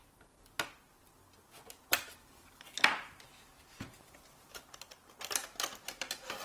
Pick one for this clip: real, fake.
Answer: real